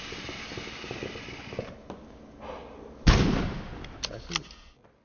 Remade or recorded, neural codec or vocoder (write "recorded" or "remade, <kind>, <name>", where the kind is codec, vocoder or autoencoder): recorded